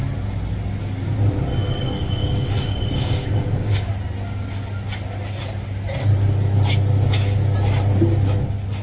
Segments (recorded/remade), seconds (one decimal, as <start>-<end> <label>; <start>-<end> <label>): 0.0-1.6 recorded; 1.6-3.9 remade; 3.9-8.8 recorded